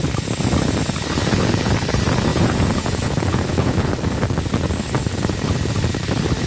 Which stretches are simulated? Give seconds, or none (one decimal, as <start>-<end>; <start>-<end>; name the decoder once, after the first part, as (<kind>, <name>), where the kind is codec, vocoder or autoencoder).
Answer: 1.2-1.7 (vocoder, Vocos); 2.3-3.9